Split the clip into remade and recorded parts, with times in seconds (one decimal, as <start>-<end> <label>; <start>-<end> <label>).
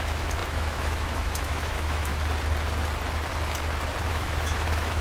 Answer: 0.0-2.1 remade; 2.1-4.1 recorded; 4.1-5.0 remade